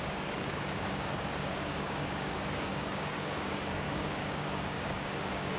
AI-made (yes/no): yes